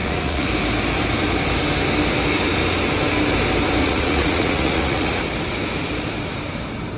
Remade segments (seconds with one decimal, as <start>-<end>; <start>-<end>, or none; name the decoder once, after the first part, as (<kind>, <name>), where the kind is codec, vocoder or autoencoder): 0.0-0.5 (vocoder, Vocos); 3.8-5.2